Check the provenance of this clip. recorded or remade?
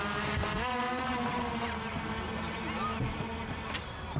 recorded